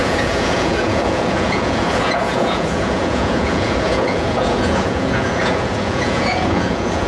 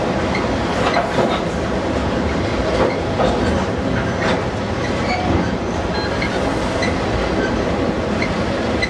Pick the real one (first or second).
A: second